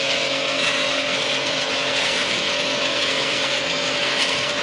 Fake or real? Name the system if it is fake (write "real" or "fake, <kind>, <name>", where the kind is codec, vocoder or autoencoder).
fake, codec, SNAC